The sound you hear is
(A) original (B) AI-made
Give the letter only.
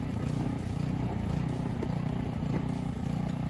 A